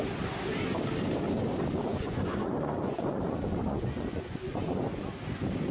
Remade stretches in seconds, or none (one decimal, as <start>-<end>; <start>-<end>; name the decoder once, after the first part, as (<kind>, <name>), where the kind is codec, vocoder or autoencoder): 1.9-5.0 (vocoder, Vocos)